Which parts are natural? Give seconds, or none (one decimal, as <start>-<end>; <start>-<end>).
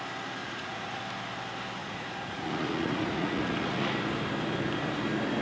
0.0-0.4; 1.0-1.8; 3.9-5.4